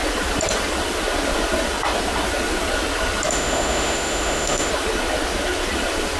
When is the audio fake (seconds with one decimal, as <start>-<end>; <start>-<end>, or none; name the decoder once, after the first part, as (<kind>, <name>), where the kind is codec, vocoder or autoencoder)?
3.3-4.7 (autoencoder, DAC-VAE)